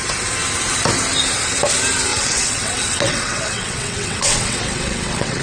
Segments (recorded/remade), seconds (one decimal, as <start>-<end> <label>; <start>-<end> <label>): 0.0-2.1 recorded; 2.1-5.4 remade